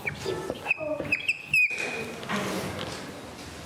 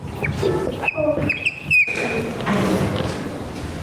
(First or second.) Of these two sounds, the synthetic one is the second